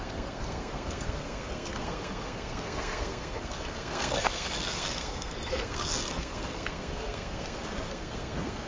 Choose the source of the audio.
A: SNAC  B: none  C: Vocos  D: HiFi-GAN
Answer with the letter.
A